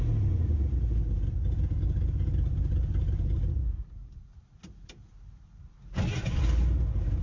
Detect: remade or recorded recorded